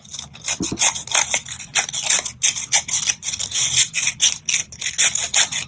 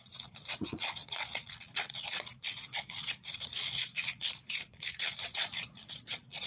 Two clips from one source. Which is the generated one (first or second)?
second